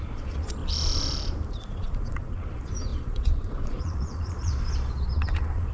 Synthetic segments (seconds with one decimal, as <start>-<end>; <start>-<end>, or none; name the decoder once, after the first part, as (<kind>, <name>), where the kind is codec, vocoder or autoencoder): 0.0-0.6 (vocoder, Vocos); 1.5-5.7